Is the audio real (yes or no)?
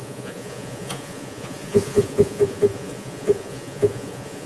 no